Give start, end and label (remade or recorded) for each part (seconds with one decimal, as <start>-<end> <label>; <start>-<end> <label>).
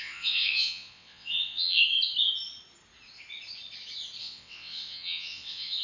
0.0-1.8 remade; 1.8-4.2 recorded; 4.2-5.8 remade